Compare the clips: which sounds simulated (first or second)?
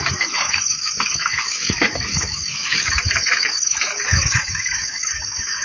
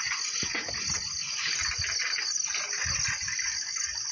first